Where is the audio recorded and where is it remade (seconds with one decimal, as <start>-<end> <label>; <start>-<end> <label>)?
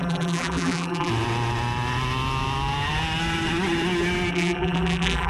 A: 0.0-1.1 remade; 1.1-4.3 recorded; 4.3-5.3 remade